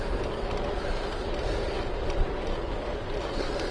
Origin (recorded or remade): recorded